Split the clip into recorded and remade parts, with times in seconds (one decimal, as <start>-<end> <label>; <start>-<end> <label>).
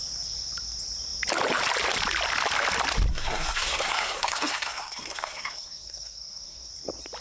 0.0-3.1 recorded; 3.1-6.7 remade; 6.7-7.2 recorded